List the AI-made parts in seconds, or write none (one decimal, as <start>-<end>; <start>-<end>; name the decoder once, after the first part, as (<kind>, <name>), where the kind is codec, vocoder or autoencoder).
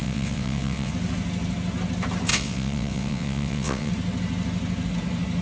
0.0-0.9 (vocoder, WaveNeXt); 2.3-3.9